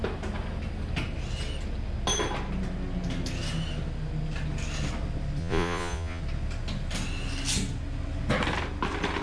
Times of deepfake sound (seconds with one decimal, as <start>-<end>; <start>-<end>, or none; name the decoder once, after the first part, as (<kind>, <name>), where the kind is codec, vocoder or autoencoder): 5.4-6.2 (vocoder, Vocos)